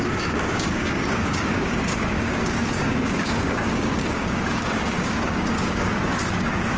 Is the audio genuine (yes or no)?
no